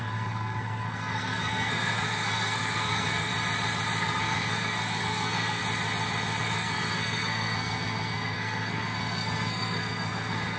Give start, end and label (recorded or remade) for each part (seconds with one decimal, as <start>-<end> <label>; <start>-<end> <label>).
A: 0.0-3.3 remade; 3.3-4.0 recorded; 4.0-5.6 remade; 5.6-6.4 recorded; 6.4-10.6 remade